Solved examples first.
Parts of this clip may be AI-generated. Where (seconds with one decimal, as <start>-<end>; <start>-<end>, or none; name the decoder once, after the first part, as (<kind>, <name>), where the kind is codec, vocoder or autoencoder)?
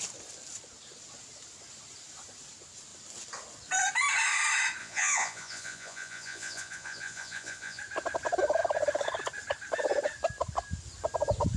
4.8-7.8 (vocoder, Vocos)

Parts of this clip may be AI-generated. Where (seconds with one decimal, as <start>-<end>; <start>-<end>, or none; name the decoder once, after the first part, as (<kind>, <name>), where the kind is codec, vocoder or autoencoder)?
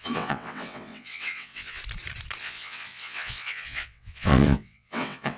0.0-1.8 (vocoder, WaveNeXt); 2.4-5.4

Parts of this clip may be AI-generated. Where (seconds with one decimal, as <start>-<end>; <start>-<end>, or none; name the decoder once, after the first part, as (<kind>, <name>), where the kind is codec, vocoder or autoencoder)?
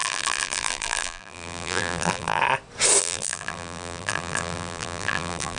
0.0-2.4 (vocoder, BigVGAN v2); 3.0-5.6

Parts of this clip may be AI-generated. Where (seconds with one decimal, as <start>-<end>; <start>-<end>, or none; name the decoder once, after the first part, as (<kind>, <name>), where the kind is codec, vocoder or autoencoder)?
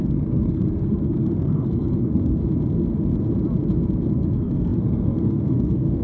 0.0-2.4 (codec, SNAC); 4.1-6.0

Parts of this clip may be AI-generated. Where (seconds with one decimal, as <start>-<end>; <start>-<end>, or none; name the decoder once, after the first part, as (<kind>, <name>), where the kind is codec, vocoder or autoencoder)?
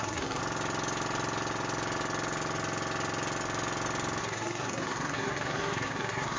0.0-0.4 (codec, SNAC); 4.2-6.4